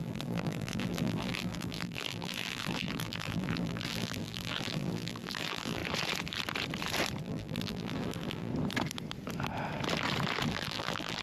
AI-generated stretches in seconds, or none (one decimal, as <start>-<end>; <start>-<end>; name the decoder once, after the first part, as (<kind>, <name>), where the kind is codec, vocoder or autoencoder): 0.0-5.8 (vocoder, BigVGAN v2); 7.2-8.5; 10.5-11.2